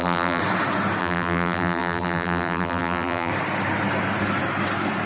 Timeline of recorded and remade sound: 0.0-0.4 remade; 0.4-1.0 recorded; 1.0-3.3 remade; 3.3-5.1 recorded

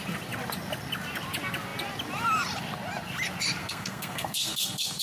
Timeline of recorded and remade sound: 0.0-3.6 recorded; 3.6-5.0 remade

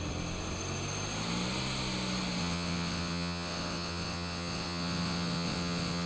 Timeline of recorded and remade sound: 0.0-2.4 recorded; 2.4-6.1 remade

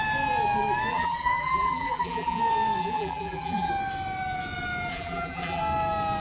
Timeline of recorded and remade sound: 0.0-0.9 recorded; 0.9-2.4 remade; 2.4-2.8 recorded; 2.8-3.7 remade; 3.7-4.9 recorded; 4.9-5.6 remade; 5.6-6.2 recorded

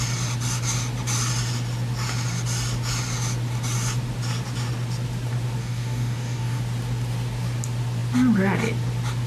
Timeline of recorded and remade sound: 0.0-5.6 recorded; 5.6-6.6 remade; 6.6-9.3 recorded